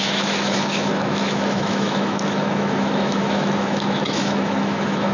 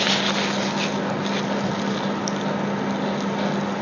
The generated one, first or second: first